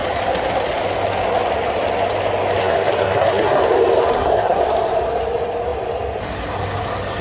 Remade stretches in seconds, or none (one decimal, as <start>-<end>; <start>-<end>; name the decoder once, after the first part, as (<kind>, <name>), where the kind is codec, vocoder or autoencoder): 2.6-3.6 (codec, SNAC); 4.1-4.6